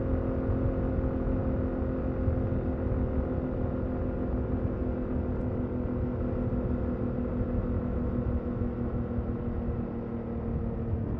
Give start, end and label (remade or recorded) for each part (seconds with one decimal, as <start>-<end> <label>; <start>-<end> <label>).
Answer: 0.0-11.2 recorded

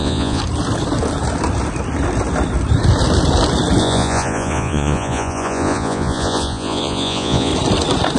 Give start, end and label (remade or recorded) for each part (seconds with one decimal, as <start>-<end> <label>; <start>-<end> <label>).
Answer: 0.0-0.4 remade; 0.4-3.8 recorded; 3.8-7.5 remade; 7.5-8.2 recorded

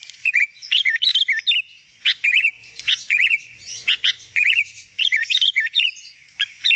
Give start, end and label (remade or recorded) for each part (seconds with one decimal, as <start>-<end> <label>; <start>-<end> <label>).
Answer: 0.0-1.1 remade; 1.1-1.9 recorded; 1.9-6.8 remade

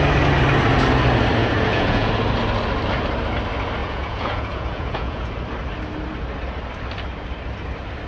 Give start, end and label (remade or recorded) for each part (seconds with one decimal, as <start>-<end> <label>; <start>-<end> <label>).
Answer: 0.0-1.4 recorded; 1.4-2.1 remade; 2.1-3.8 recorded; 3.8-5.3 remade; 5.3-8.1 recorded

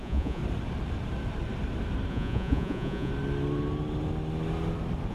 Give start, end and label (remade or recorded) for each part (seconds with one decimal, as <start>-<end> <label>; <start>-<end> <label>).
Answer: 0.0-0.4 remade; 0.4-2.1 recorded; 2.1-3.1 remade; 3.1-5.1 recorded

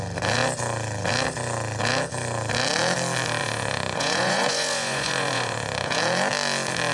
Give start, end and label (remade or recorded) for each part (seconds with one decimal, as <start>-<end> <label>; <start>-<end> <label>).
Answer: 0.0-3.4 recorded; 3.4-6.0 remade; 6.0-6.9 recorded